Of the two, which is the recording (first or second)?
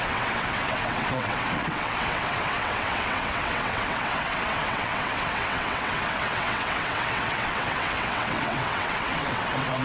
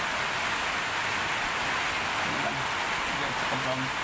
second